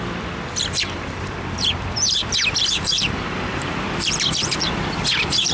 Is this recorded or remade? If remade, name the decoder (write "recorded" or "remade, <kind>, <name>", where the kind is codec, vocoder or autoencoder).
remade, vocoder, BigVGAN v2